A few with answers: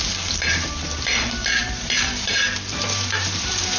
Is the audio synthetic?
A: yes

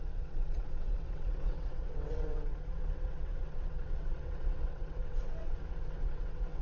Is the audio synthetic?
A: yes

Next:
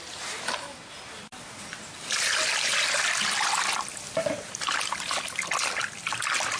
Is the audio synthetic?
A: no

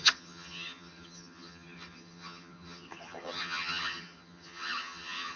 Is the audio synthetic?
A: yes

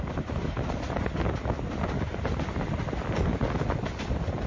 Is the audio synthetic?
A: no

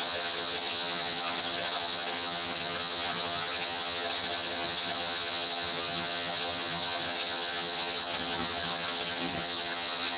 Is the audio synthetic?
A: yes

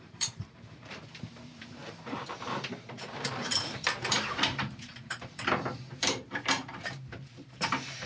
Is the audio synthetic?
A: yes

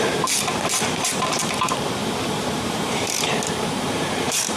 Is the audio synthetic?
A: yes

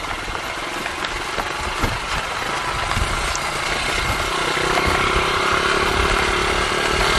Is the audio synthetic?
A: no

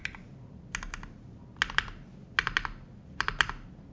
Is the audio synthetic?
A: no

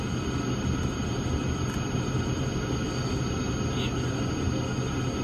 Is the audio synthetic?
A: no